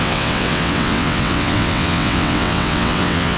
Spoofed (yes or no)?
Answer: yes